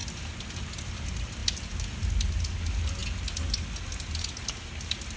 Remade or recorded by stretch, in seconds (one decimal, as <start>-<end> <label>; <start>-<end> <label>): 0.0-5.2 recorded